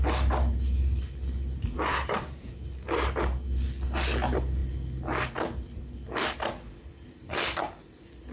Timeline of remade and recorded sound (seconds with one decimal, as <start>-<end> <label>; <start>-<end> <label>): 0.0-1.9 recorded; 1.9-2.5 remade; 2.5-8.3 recorded